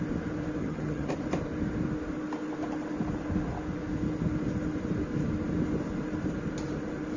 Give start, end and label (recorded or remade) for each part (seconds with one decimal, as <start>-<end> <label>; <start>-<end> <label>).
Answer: 0.0-0.6 recorded; 0.6-1.1 remade; 1.1-7.2 recorded